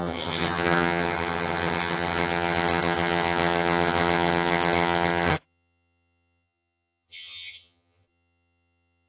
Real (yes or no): no